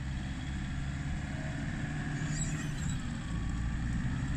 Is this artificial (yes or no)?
no